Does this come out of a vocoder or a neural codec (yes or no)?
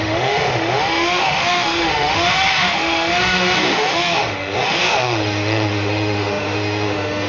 yes